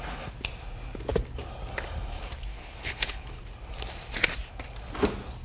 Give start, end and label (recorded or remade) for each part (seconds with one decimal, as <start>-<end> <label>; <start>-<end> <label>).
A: 0.0-2.5 recorded; 2.5-3.4 remade; 3.4-5.4 recorded